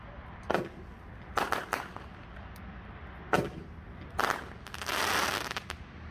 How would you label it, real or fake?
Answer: real